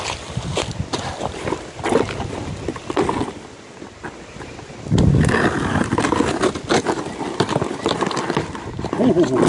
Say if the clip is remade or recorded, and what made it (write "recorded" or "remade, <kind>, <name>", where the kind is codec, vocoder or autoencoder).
recorded